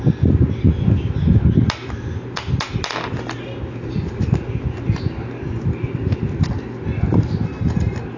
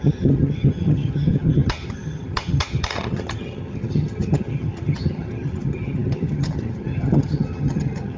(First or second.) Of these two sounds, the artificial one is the second